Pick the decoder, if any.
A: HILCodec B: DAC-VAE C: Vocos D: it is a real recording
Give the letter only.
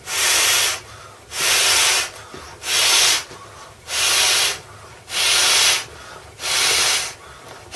D